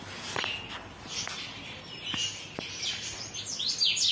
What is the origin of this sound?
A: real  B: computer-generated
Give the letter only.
A